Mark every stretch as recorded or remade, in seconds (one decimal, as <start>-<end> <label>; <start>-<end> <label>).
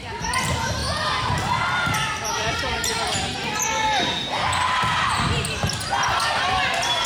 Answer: 0.0-7.1 recorded